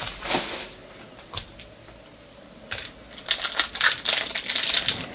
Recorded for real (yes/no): yes